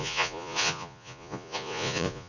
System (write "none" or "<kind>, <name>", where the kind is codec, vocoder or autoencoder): vocoder, Vocos